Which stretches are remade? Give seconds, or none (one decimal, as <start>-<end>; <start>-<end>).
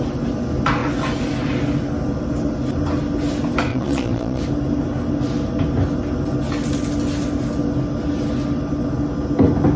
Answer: 3.7-4.4